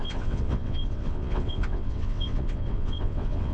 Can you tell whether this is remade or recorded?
remade